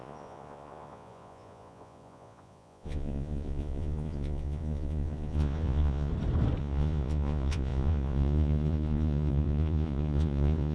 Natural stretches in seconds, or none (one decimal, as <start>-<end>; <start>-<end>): 6.1-6.6